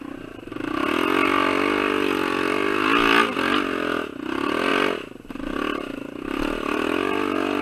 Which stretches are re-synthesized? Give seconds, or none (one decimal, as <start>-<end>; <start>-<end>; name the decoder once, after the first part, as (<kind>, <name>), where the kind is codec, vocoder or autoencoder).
none